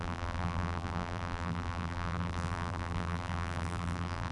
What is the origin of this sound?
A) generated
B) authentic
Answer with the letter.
A